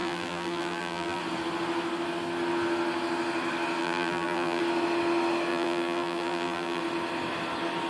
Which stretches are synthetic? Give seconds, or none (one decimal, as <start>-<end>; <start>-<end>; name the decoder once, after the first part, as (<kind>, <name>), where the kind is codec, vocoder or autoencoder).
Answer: 0.0-1.2 (vocoder, BigVGAN v2); 3.8-4.6; 5.5-6.8